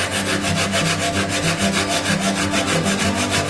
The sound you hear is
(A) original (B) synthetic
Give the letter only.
A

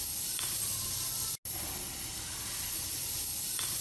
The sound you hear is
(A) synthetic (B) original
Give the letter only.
B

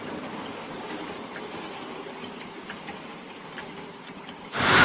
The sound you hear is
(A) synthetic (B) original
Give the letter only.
B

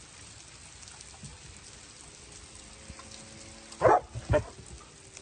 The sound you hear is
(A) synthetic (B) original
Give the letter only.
B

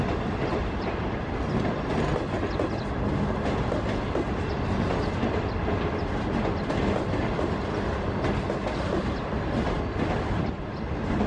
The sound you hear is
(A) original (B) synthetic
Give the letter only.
A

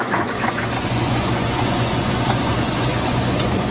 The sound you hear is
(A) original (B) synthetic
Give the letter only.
B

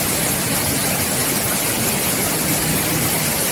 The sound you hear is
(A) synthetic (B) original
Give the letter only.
B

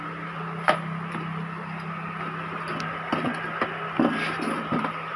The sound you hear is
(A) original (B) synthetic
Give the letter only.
A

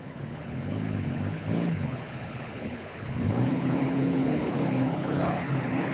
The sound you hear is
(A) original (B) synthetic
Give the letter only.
B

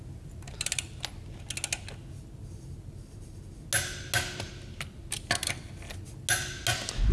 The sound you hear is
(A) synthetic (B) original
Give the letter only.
B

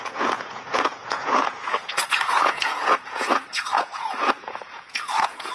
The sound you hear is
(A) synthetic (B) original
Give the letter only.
A